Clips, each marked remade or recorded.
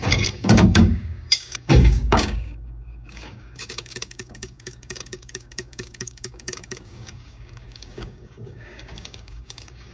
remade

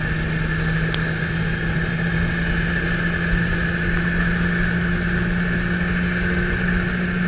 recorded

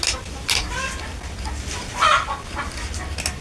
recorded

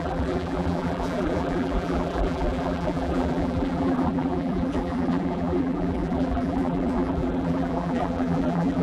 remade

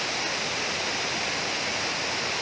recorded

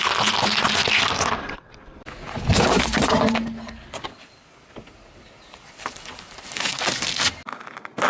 recorded